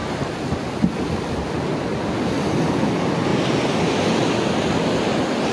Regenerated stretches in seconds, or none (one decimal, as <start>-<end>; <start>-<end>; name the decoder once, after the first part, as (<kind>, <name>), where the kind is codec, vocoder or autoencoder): none